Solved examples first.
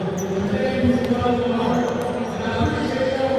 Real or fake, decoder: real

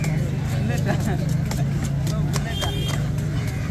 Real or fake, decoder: real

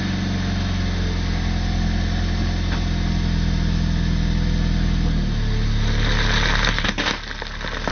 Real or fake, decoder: real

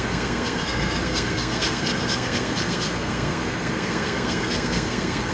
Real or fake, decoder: fake, codec, SNAC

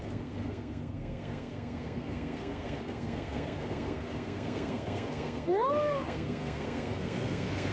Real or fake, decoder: fake, codec, SNAC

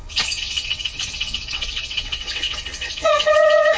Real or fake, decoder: fake, vocoder, WaveNeXt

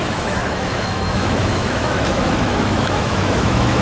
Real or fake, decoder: fake, autoencoder, DAC-VAE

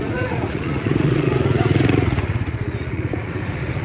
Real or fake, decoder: fake, vocoder, Vocos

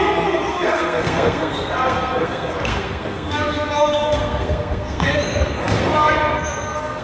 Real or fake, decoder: fake, codec, SNAC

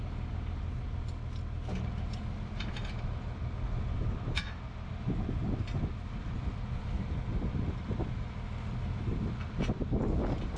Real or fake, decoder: real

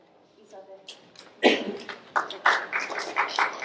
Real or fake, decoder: real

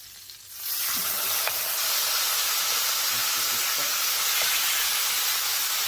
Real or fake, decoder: real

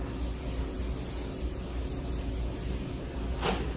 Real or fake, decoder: real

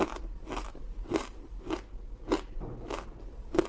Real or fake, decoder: real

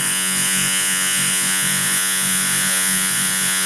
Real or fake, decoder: fake, vocoder, Vocos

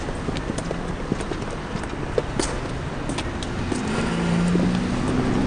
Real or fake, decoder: real